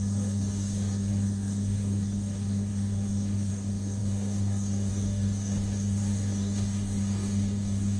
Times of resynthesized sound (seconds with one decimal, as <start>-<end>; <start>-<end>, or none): 0.0-8.0